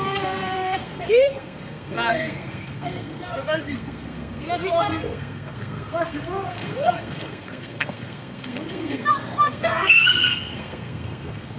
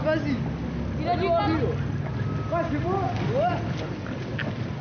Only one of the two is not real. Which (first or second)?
first